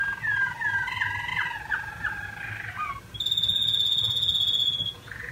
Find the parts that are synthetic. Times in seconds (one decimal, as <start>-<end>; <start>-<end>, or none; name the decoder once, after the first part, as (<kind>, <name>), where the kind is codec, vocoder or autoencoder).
3.5-5.3 (vocoder, Vocos)